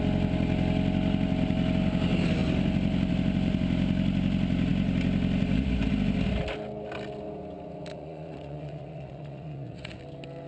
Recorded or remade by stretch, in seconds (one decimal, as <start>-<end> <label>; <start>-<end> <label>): 0.0-7.9 recorded; 7.9-10.0 remade; 10.0-10.5 recorded